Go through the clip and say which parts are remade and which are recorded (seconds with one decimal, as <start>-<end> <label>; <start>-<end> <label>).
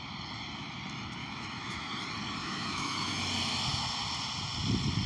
0.0-1.2 recorded; 1.2-1.9 remade; 1.9-2.4 recorded; 2.4-3.2 remade; 3.2-5.1 recorded